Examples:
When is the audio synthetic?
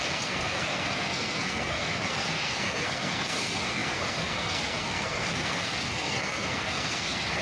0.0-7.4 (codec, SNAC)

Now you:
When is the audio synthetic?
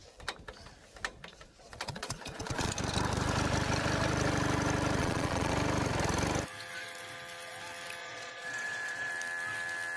1.3-2.7 (vocoder, Vocos); 5.0-5.5; 8.0-9.1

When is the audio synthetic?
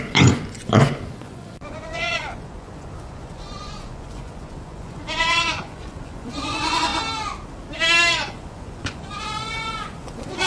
0.0-6.9 (vocoder, Vocos); 8.1-10.5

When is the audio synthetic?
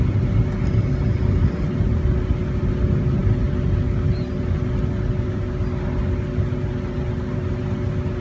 none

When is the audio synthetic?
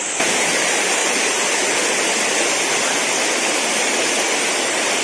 none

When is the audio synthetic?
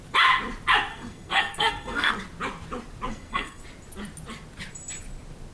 0.9-2.1 (codec, SNAC); 3.1-3.6